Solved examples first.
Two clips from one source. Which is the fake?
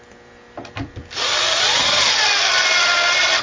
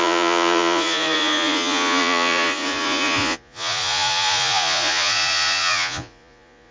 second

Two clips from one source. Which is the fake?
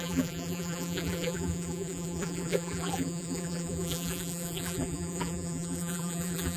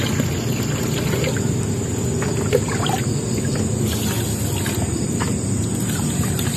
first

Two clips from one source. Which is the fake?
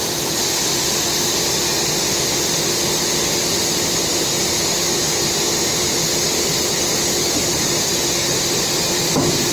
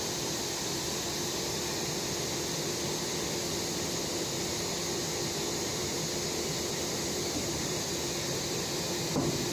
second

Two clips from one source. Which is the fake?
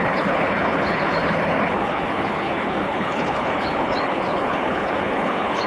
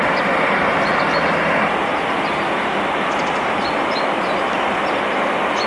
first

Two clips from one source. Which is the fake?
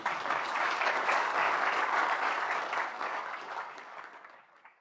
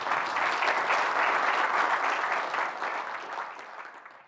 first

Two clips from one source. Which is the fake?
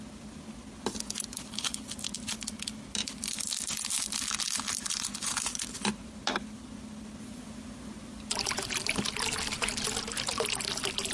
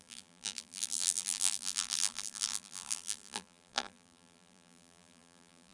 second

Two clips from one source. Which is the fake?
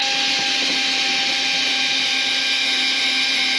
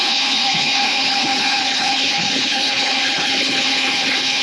second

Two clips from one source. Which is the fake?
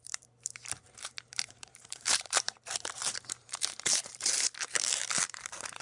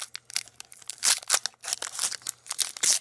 first